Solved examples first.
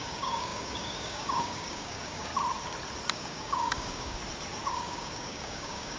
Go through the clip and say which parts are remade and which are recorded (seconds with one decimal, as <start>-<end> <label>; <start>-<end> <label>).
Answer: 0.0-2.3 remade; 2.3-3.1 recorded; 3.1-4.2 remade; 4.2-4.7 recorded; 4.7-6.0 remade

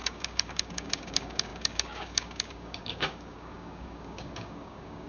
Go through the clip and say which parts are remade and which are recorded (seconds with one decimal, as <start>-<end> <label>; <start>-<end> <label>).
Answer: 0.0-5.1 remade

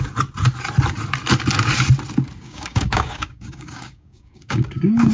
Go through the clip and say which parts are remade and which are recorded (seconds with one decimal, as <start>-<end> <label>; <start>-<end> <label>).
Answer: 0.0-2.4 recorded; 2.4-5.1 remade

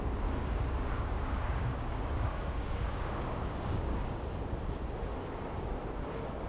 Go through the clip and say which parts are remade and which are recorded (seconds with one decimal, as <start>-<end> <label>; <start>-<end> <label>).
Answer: 0.0-0.4 recorded; 0.4-4.2 remade; 4.2-6.5 recorded

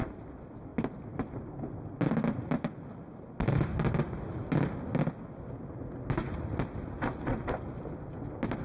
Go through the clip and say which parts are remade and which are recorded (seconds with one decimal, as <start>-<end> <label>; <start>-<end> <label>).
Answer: 0.0-8.6 recorded

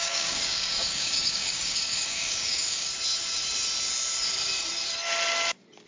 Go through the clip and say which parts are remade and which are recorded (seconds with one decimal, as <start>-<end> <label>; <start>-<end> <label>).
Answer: 0.0-2.9 remade; 2.9-5.9 recorded

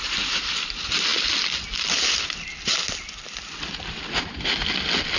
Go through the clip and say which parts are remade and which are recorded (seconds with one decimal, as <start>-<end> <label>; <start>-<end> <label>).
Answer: 0.0-5.2 recorded

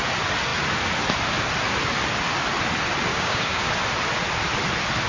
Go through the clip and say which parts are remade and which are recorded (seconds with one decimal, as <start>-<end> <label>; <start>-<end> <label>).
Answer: 0.0-3.1 recorded; 3.1-3.7 remade; 3.7-5.1 recorded